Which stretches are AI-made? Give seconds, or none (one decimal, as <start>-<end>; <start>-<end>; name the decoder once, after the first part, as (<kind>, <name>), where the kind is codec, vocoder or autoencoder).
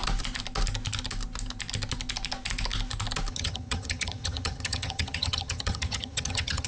3.3-6.7 (vocoder, HiFi-GAN)